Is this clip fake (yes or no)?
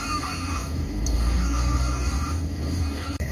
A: yes